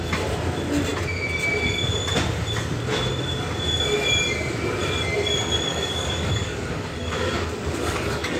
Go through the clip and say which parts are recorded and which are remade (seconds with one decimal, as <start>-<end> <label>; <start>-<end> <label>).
0.0-5.7 recorded; 5.7-8.4 remade